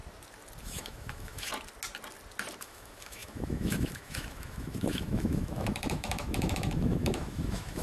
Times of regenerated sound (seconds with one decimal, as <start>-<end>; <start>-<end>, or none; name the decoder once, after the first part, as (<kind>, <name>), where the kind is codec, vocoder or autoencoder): 0.6-1.5 (autoencoder, DAC-VAE); 2.6-7.8